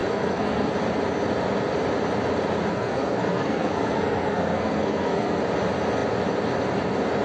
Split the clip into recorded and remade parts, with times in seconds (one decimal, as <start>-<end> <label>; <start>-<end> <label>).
0.0-0.7 remade; 0.7-2.7 recorded; 2.7-5.4 remade; 5.4-7.2 recorded